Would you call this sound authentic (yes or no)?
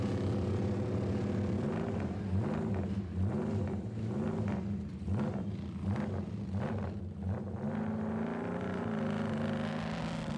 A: yes